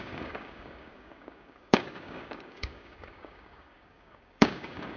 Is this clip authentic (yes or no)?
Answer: no